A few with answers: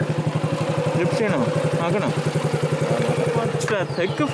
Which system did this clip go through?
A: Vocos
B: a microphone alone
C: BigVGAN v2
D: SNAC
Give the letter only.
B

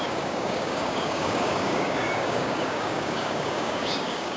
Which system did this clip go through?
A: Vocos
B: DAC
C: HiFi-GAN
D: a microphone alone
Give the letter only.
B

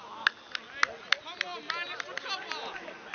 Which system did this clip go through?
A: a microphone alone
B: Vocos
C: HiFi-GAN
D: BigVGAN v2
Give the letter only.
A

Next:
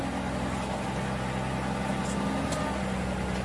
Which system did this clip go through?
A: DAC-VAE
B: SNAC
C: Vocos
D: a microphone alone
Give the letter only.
D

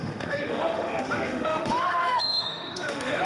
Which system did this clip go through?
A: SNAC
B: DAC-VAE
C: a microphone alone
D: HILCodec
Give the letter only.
B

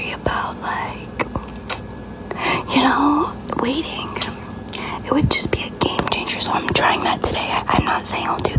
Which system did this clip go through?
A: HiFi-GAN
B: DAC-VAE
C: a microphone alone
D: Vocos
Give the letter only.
C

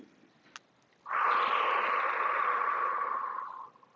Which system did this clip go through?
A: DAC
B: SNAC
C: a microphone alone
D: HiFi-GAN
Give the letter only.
C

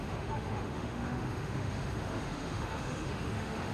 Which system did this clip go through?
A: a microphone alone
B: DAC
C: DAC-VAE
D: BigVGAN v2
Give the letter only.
C